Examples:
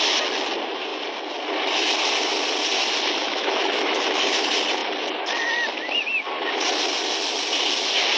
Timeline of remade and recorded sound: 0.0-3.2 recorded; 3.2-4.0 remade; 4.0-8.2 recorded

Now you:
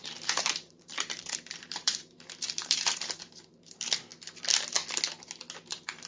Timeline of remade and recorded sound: 0.0-4.1 remade; 4.1-5.6 recorded; 5.6-6.1 remade

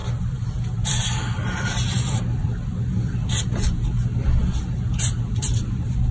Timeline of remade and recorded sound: 0.0-3.4 remade; 3.4-4.4 recorded; 4.4-6.1 remade

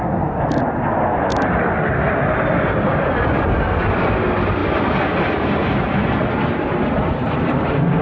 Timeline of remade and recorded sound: 0.0-8.0 recorded

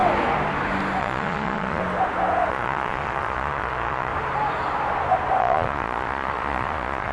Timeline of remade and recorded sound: 0.0-1.0 recorded; 1.0-1.8 remade; 1.8-2.5 recorded; 2.5-4.1 remade; 4.1-5.4 recorded; 5.4-7.1 remade

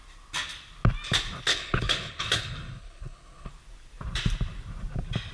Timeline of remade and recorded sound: 0.0-1.5 recorded; 1.5-3.5 remade; 3.5-5.3 recorded